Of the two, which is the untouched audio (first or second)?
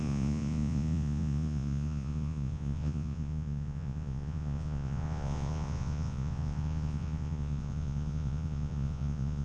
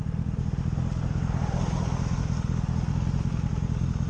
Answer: second